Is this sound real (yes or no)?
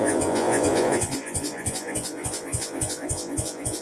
no